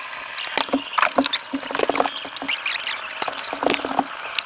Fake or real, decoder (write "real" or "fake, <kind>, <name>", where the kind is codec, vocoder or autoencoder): real